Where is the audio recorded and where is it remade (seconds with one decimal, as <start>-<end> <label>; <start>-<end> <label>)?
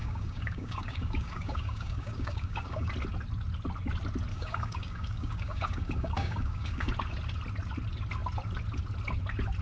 0.0-2.9 remade; 2.9-4.3 recorded; 4.3-6.9 remade; 6.9-9.6 recorded